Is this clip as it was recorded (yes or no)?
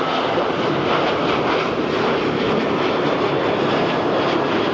yes